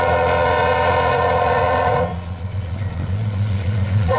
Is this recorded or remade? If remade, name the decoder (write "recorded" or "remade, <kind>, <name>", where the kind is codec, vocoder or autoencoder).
remade, vocoder, Vocos